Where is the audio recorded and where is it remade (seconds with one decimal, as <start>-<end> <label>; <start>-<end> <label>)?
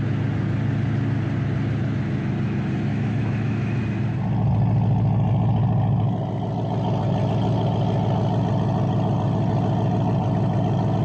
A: 0.0-2.9 recorded; 2.9-3.8 remade; 3.8-11.0 recorded